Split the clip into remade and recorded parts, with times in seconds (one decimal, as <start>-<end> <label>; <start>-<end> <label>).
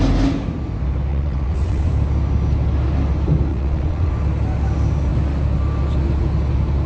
0.0-1.1 recorded; 1.1-1.9 remade; 1.9-3.5 recorded; 3.5-4.1 remade; 4.1-6.9 recorded